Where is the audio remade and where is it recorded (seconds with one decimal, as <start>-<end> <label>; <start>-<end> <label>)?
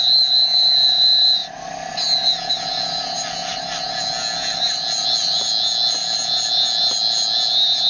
0.0-7.9 recorded